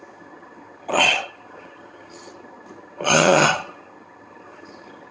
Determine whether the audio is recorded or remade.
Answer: remade